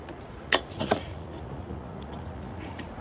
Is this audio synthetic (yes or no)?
yes